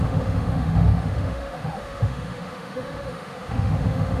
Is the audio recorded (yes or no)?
no